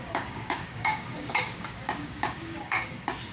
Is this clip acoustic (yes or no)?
no